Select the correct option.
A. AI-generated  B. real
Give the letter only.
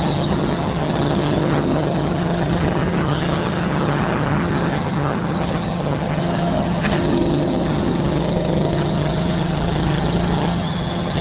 A